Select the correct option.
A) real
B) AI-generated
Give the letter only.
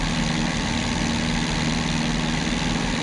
A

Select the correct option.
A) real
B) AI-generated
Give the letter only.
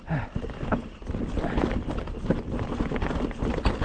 A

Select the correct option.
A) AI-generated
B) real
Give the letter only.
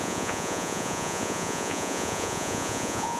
A